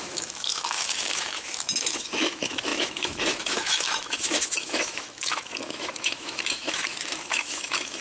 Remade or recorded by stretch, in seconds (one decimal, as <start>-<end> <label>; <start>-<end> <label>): 0.0-8.0 remade